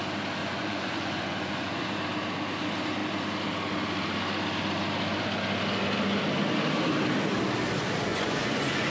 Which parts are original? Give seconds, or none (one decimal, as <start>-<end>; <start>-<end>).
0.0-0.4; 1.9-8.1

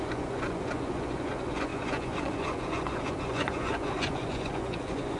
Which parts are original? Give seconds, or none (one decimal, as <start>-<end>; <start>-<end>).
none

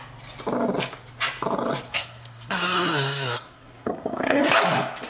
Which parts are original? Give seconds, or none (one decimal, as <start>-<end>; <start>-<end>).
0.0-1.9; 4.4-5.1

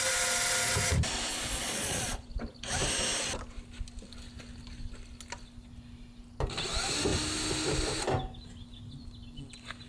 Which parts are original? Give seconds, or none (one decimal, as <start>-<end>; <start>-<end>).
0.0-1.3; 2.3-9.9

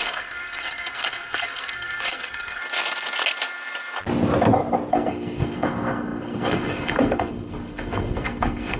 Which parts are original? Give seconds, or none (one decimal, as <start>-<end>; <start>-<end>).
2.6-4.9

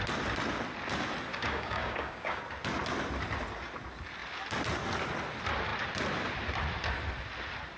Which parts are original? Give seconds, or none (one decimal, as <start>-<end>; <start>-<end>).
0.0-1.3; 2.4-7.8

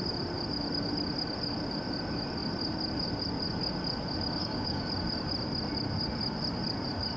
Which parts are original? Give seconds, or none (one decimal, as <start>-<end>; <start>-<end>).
0.0-4.4; 4.9-7.2